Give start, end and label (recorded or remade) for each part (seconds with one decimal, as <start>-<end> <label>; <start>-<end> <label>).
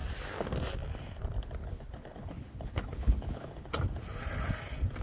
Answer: 0.0-1.6 recorded; 1.6-3.7 remade; 3.7-5.0 recorded